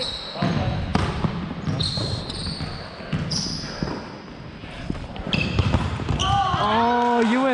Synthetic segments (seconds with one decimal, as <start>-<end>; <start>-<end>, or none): 4.6-6.5